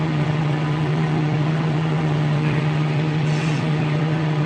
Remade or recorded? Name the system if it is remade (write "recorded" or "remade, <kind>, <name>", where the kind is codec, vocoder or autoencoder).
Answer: remade, vocoder, WaveNeXt